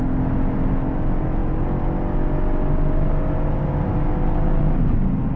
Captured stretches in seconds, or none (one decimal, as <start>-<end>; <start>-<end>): 0.0-5.4